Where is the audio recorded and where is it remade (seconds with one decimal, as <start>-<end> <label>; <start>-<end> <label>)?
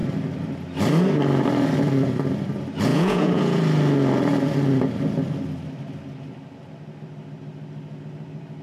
0.0-2.9 recorded; 2.9-3.6 remade; 3.6-8.6 recorded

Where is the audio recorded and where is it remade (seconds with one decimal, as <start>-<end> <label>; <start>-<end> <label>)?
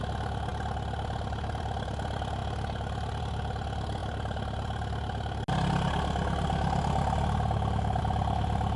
0.0-8.8 recorded